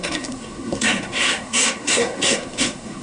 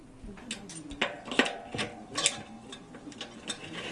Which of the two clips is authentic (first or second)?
second